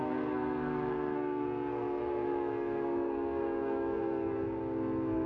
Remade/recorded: remade